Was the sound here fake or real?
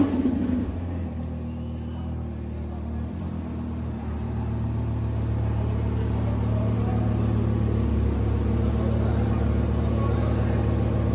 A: real